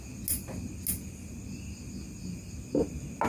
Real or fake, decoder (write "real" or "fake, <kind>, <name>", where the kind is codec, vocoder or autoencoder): real